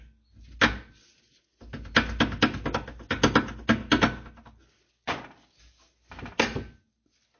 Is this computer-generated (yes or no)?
no